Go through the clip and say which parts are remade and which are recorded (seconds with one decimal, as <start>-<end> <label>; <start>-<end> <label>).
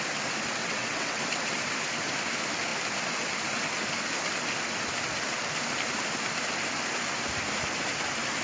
0.0-0.6 recorded; 0.6-1.2 remade; 1.2-8.4 recorded